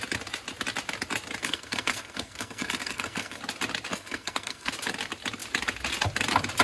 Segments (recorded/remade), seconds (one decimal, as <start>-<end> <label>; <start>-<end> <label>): 0.0-1.4 recorded; 1.4-3.4 remade; 3.4-3.9 recorded; 3.9-4.7 remade; 4.7-6.6 recorded